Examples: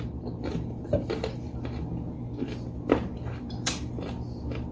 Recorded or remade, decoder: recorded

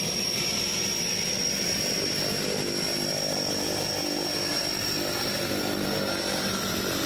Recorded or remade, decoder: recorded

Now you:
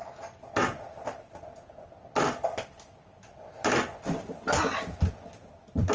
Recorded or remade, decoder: recorded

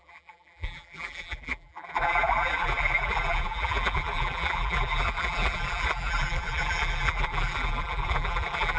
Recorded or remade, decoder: remade, vocoder, BigVGAN v2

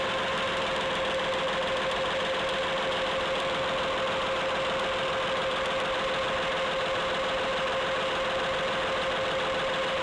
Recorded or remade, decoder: recorded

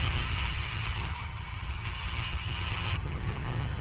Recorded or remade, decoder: remade, vocoder, HiFi-GAN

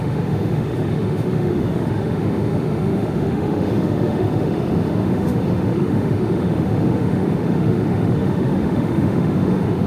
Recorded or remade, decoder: remade, autoencoder, DAC-VAE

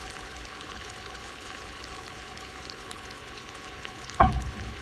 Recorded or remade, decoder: remade, codec, HILCodec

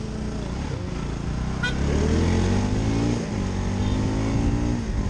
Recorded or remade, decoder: recorded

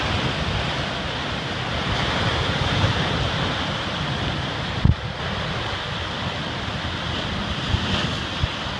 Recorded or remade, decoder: recorded